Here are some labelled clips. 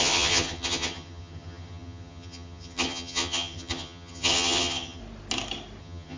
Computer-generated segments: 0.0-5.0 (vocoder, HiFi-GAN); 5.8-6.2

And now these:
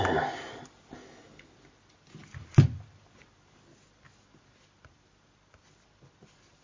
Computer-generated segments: none